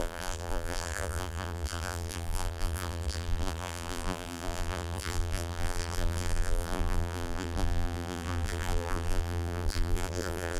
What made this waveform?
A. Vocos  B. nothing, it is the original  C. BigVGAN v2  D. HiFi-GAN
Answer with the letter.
C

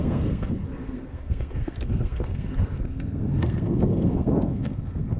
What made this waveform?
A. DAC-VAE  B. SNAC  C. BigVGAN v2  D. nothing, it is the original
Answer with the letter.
B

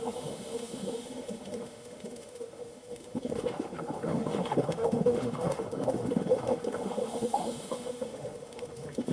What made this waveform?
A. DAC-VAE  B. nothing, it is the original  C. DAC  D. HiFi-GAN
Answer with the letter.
A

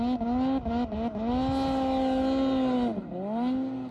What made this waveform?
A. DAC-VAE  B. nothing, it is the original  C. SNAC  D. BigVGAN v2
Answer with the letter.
B